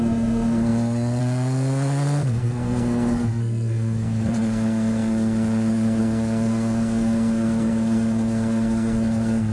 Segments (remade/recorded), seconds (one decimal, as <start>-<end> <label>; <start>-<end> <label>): 0.0-9.5 remade